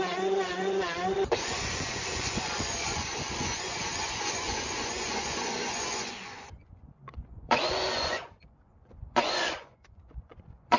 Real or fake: fake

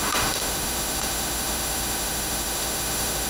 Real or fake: fake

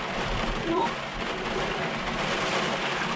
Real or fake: real